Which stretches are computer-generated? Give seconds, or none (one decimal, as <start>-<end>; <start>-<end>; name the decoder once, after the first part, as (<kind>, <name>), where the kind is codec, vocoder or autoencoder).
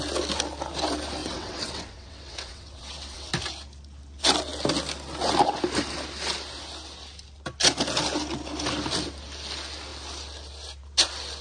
1.2-3.3 (vocoder, WaveNeXt)